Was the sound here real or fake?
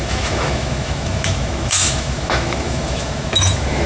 fake